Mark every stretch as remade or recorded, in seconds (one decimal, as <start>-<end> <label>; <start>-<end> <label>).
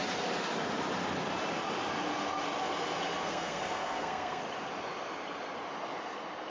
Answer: 0.0-3.2 recorded; 3.2-4.4 remade; 4.4-6.5 recorded